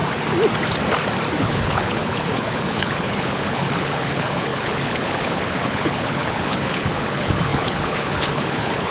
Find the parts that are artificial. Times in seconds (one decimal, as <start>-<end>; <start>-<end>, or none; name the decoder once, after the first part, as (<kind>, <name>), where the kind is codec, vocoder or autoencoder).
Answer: 1.4-8.9 (codec, HILCodec)

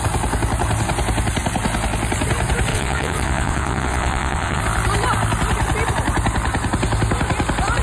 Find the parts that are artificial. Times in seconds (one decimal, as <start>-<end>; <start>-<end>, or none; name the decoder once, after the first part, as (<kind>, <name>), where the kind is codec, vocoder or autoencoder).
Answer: 2.7-4.6 (vocoder, WaveNeXt)

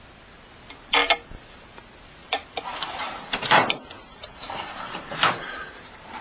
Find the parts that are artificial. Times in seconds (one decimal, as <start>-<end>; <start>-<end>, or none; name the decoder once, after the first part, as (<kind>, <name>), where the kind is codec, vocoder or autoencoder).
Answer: 2.2-6.2 (vocoder, BigVGAN v2)

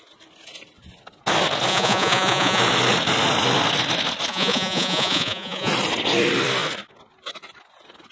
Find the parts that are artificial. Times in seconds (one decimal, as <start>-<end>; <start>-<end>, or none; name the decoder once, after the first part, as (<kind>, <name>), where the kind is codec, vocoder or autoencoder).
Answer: 1.7-2.6 (vocoder, Vocos); 4.3-5.7

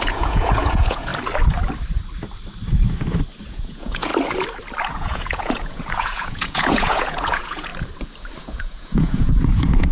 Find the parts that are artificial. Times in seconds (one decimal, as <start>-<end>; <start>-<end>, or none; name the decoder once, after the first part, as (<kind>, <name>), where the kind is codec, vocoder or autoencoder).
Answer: 0.0-1.1 (vocoder, Vocos); 3.5-4.1; 4.9-7.7; 8.4-9.9